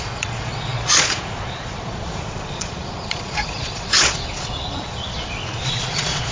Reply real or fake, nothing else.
fake